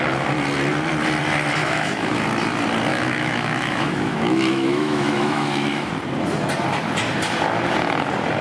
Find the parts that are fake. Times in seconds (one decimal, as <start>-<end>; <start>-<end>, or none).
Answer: 1.6-2.1; 2.9-5.9

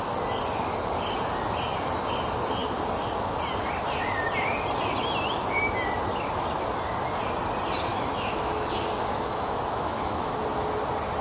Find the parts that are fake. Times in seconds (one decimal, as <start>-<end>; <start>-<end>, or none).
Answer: 7.9-8.7; 9.3-10.4

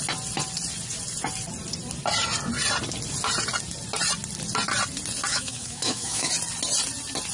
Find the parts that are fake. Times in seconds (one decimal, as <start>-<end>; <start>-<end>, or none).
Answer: 5.3-6.3

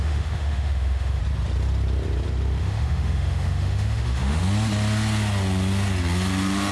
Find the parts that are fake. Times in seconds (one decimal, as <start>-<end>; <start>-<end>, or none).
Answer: 0.0-1.2; 2.6-4.4